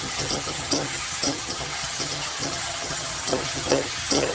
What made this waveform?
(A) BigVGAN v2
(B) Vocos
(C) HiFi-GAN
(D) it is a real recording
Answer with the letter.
C